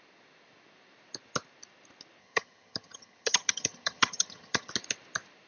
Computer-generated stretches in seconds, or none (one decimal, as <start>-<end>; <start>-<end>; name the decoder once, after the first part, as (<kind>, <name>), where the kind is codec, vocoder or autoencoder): 2.2-4.7 (vocoder, HiFi-GAN)